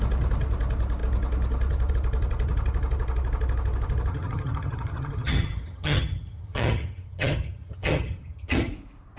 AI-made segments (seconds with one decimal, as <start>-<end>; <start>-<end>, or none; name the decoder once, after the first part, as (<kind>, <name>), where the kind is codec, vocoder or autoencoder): 4.1-8.7 (vocoder, HiFi-GAN)